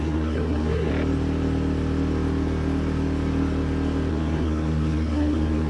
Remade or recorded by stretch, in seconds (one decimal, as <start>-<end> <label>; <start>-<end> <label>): 0.0-0.9 remade; 0.9-4.1 recorded; 4.1-5.7 remade